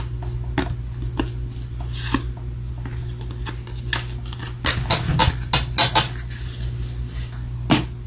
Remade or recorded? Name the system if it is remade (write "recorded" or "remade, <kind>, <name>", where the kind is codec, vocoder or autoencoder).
recorded